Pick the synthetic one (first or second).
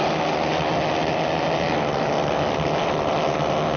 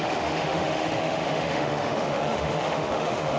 second